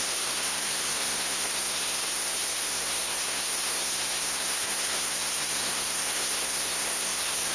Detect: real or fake fake